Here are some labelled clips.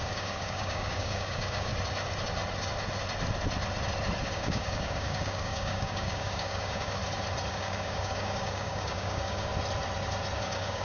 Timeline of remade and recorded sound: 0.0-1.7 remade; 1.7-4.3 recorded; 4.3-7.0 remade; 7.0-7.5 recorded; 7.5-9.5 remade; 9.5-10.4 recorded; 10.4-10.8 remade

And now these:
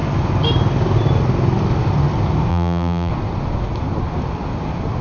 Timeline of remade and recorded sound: 0.0-2.5 recorded; 2.5-3.1 remade; 3.1-5.0 recorded